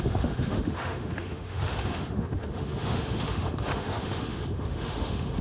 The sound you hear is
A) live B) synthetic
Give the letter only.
B